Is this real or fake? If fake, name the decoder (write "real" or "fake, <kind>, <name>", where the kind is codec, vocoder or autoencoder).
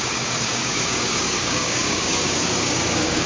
fake, codec, DAC